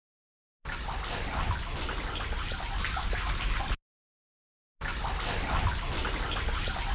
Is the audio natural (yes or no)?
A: yes